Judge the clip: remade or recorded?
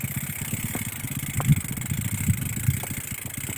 recorded